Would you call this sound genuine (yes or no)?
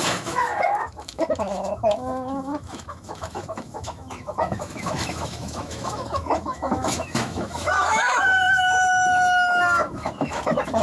no